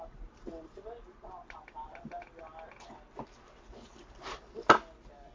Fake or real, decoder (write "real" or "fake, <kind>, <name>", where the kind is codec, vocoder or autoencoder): real